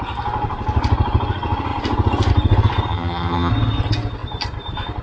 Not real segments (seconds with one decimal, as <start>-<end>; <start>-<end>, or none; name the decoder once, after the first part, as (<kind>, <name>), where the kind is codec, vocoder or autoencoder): 2.9-3.5 (vocoder, HiFi-GAN)